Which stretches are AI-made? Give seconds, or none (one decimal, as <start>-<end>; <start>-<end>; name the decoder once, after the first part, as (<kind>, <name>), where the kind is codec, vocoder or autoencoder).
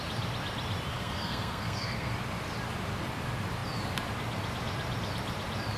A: 0.9-2.1 (codec, SNAC)